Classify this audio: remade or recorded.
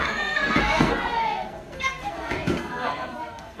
remade